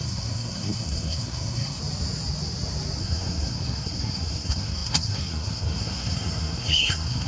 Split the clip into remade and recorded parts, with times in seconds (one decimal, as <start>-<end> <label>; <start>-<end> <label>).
0.0-1.8 remade; 1.8-3.0 recorded; 3.0-7.3 remade